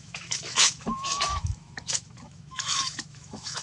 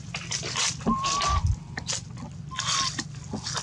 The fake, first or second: first